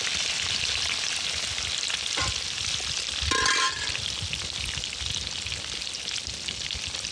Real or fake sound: real